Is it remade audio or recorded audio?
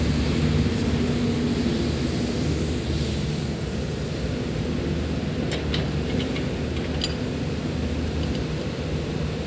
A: recorded